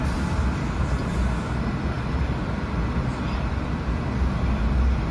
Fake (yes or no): no